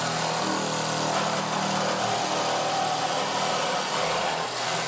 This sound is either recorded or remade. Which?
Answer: recorded